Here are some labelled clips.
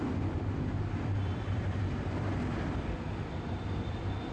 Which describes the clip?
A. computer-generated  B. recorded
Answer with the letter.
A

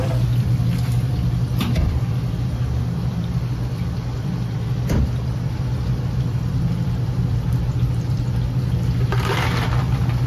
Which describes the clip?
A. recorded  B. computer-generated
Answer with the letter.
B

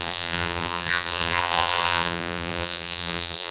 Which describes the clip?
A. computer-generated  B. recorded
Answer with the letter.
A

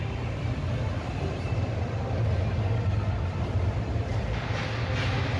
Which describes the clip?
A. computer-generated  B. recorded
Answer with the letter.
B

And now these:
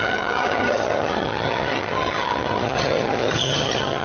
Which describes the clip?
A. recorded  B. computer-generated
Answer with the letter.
B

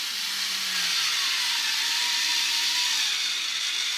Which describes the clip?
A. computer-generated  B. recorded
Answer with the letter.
B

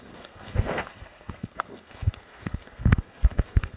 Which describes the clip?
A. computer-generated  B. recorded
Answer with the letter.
A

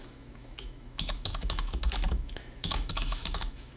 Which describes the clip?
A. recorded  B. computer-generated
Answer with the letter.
B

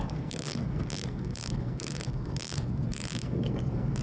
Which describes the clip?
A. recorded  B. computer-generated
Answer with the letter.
B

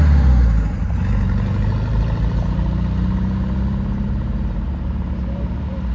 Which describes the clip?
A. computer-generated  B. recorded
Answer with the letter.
B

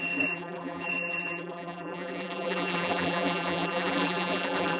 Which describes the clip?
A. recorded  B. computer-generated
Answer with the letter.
B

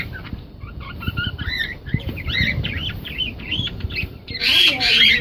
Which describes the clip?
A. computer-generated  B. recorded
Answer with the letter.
A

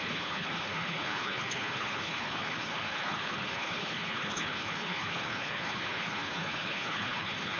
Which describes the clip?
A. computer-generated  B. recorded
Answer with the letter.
A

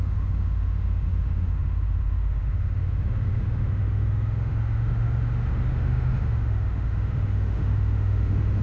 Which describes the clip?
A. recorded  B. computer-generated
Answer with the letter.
B